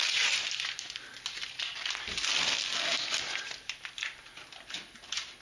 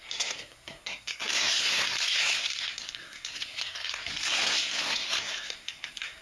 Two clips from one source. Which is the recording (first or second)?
first